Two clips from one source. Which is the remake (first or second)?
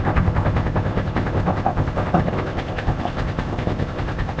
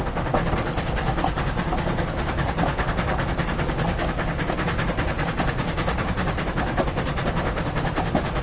first